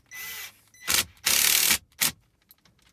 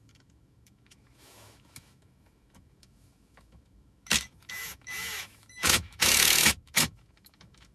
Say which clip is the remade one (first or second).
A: second